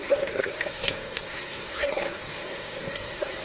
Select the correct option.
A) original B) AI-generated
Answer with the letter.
B